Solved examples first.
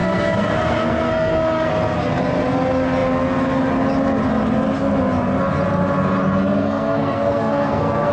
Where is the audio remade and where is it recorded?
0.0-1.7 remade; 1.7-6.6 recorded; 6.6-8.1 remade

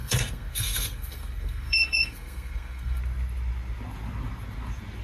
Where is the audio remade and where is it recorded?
0.0-3.0 remade; 3.0-5.0 recorded

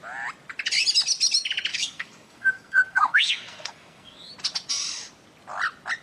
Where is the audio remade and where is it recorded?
0.0-1.7 recorded; 1.7-4.3 remade; 4.3-6.0 recorded

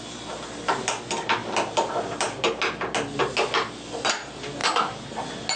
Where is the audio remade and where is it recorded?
0.0-5.6 recorded

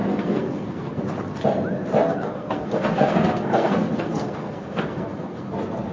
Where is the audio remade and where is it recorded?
0.0-1.0 remade; 1.0-2.0 recorded; 2.0-5.5 remade; 5.5-5.9 recorded

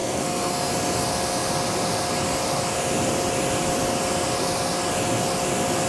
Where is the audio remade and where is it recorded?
0.0-0.7 remade; 0.7-5.9 recorded

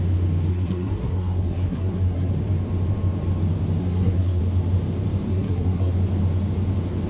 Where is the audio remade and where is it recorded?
0.0-0.5 recorded; 0.5-2.3 remade; 2.3-3.8 recorded; 3.8-4.4 remade; 4.4-5.3 recorded; 5.3-5.9 remade; 5.9-7.1 recorded